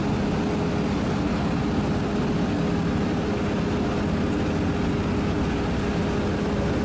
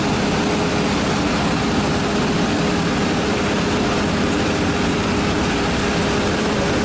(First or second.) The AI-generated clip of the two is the second